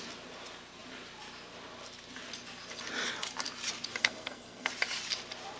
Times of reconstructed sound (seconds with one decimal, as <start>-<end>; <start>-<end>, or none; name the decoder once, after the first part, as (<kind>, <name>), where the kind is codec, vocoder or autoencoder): 4.0-4.7 (codec, SNAC)